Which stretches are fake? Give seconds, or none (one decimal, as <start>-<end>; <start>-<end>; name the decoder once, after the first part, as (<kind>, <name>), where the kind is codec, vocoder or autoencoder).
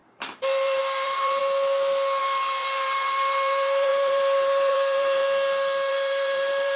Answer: 0.0-1.4 (vocoder, BigVGAN v2); 2.2-5.2; 5.9-6.8